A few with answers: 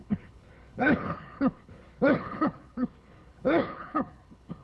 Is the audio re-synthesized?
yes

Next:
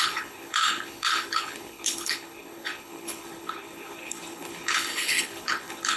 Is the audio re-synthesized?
yes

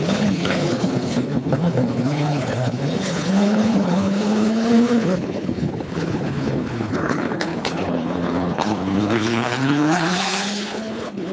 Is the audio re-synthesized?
yes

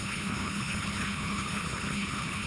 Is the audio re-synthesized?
yes